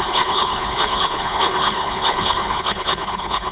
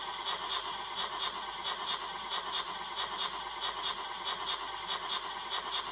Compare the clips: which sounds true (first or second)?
second